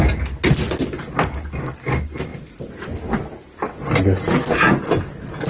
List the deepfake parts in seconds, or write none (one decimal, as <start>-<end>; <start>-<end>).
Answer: none